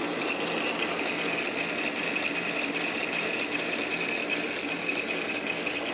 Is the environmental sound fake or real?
real